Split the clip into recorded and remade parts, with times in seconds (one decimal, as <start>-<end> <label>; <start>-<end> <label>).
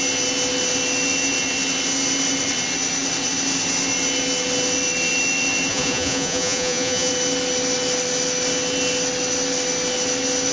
0.0-5.7 recorded; 5.7-7.1 remade; 7.1-10.5 recorded